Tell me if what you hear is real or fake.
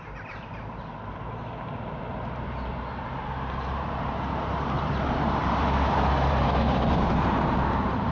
fake